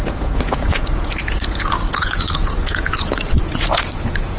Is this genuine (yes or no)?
no